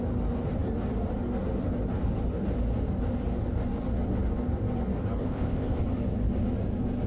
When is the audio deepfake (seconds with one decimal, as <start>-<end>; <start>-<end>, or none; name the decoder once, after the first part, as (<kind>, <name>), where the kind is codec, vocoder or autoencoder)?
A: 5.2-5.8 (codec, ZipCodec)